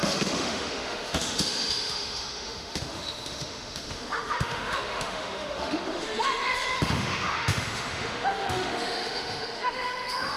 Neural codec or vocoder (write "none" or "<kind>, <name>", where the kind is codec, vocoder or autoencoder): autoencoder, DAC-VAE